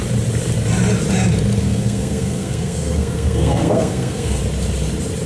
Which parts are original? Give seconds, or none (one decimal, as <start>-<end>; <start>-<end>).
0.0-1.6; 4.4-5.3